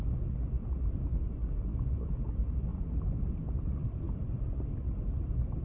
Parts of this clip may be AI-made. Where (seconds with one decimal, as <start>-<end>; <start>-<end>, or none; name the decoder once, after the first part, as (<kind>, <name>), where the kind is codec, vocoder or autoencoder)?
none